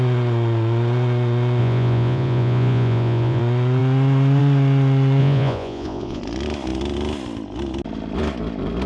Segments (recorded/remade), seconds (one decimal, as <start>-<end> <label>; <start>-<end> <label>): 0.0-1.6 recorded; 1.6-3.4 remade; 3.4-5.2 recorded; 5.2-6.2 remade; 6.2-8.9 recorded